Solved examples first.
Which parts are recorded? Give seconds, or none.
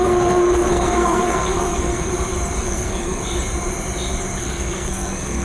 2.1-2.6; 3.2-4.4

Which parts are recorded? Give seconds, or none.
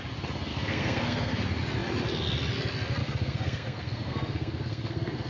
0.0-0.5; 1.3-3.0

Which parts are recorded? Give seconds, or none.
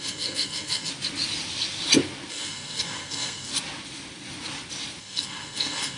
0.9-2.3; 3.5-5.0